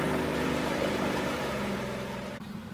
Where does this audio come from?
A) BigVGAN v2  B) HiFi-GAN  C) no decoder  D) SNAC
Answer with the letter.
A